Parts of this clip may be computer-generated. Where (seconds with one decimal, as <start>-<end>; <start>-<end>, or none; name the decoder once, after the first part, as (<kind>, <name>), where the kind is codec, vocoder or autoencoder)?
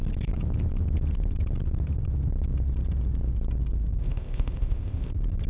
4.0-5.1 (codec, ZipCodec)